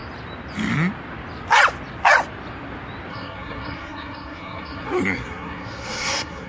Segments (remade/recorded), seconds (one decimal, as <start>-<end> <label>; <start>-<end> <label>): 0.0-3.1 recorded; 3.1-6.5 remade